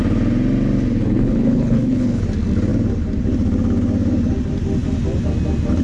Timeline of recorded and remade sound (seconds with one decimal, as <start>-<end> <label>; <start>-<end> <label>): 0.0-1.0 recorded; 1.0-2.2 remade; 2.2-5.8 recorded